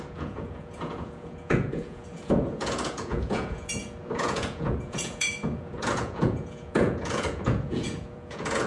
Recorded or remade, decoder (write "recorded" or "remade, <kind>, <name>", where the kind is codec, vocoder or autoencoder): remade, vocoder, Vocos